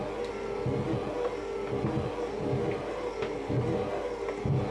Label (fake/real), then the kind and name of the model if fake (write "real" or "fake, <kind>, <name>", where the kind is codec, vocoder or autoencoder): real